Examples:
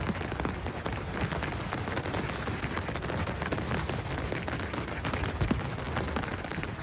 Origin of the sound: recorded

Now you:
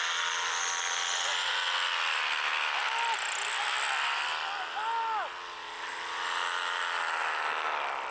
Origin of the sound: recorded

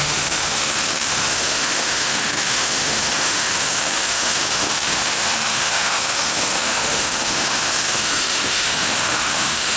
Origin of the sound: remade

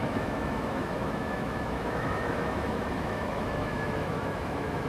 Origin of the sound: remade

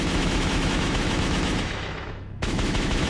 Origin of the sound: remade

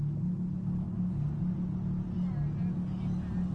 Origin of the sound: recorded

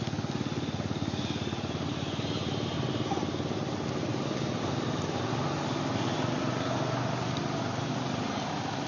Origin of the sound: recorded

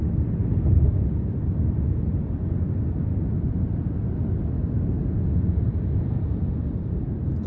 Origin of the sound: recorded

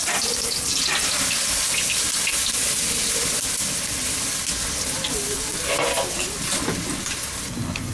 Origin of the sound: recorded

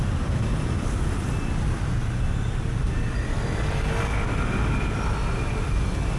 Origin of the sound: recorded